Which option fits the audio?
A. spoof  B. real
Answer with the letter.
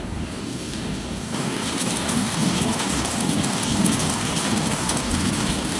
A